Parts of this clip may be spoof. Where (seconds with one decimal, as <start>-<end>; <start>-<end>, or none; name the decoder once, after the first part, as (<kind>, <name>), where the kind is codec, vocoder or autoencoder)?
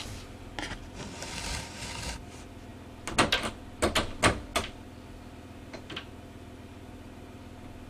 none